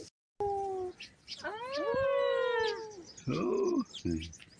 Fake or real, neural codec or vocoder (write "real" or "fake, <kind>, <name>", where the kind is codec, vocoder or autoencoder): real